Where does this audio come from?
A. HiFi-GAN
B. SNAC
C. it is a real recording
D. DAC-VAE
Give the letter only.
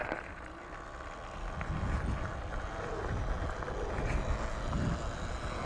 C